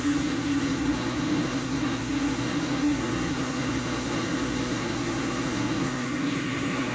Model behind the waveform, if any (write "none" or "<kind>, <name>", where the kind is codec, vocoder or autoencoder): codec, SNAC